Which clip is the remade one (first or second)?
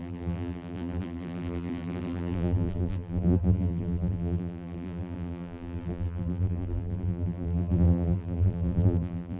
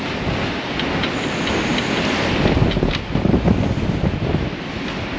first